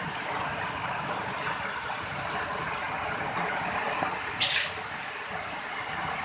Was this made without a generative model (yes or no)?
yes